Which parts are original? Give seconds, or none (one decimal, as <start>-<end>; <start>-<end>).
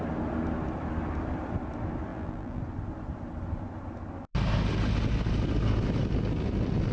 0.0-2.1; 2.6-6.9